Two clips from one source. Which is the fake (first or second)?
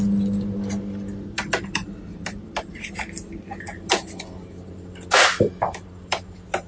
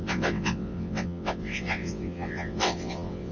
second